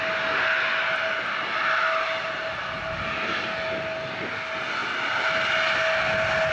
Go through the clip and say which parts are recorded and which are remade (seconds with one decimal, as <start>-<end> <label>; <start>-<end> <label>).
0.0-6.5 recorded